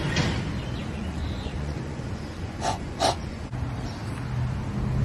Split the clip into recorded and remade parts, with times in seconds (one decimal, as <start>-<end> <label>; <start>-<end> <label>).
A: 0.0-0.8 recorded; 0.8-3.5 remade; 3.5-5.0 recorded